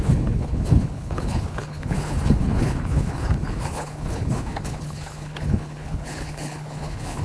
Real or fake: fake